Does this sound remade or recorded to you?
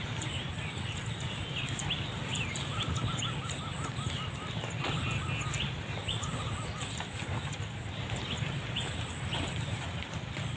recorded